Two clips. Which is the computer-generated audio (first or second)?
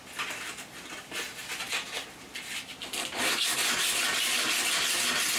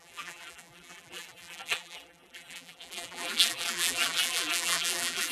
second